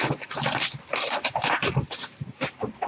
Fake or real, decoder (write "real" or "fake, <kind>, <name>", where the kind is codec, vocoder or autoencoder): real